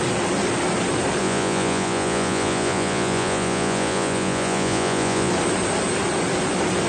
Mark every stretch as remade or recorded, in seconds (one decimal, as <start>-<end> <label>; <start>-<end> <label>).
0.0-1.2 recorded; 1.2-5.3 remade; 5.3-6.9 recorded